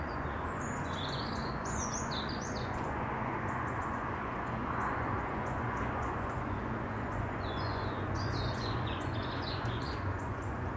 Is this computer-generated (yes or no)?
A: yes